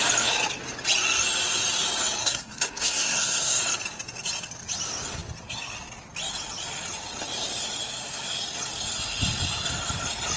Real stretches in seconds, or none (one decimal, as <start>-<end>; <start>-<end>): 0.0-2.2; 3.6-10.4